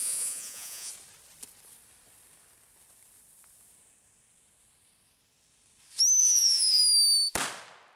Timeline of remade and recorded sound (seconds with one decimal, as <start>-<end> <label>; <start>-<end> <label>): 0.0-0.9 remade; 0.9-6.2 recorded; 6.2-6.8 remade; 6.8-8.0 recorded